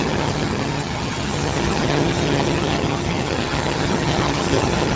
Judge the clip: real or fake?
fake